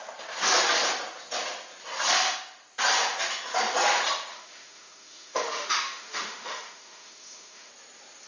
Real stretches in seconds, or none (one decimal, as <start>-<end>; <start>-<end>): 0.0-4.3; 7.7-8.3